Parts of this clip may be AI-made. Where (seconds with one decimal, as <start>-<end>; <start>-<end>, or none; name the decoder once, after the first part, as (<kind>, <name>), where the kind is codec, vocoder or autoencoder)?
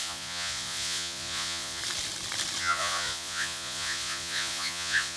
0.0-1.8 (vocoder, Vocos); 2.6-5.2